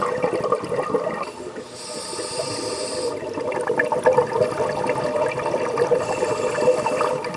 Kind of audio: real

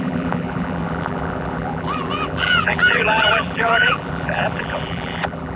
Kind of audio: fake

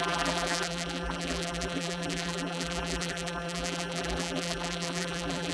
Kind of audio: fake